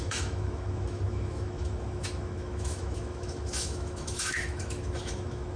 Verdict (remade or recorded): remade